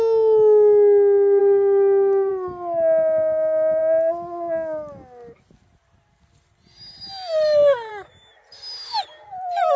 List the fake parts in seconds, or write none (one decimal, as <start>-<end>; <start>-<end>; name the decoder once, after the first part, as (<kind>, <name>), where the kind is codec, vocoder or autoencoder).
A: 1.4-2.3 (codec, SNAC)